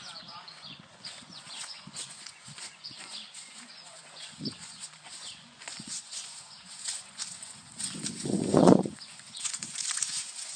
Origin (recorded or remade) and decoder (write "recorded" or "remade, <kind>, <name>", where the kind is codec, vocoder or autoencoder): remade, vocoder, Vocos